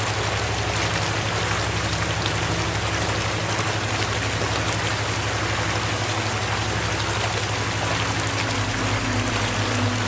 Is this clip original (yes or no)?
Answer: yes